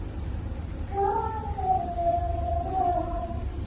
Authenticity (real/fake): fake